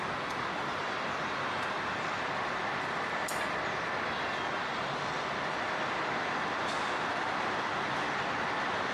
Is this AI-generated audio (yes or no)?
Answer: no